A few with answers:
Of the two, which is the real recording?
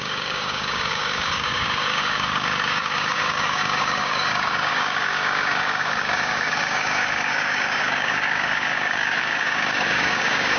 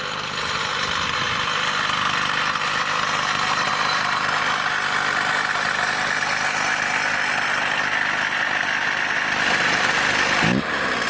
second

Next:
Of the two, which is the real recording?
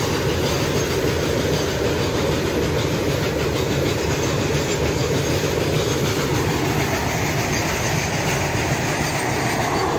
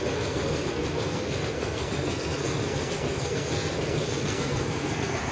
first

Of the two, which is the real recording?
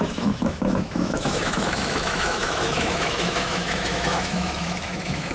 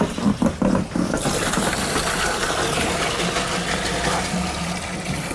second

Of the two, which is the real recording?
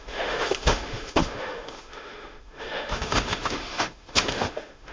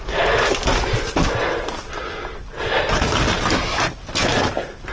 second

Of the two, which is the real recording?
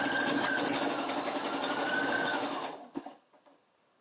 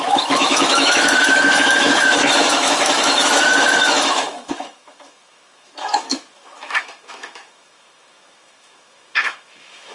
first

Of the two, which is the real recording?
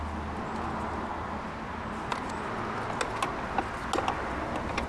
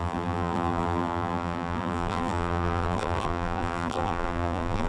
first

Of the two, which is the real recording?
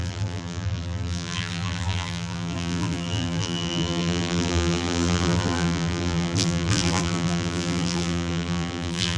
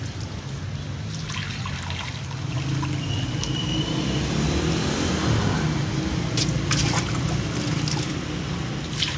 second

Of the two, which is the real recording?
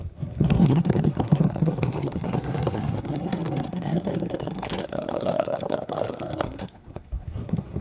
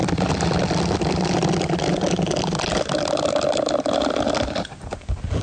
second